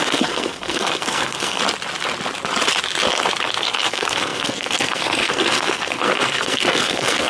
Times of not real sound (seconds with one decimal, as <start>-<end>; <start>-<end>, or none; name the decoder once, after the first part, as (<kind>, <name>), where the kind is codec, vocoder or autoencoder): 0.0-1.6 (codec, SNAC); 3.6-7.3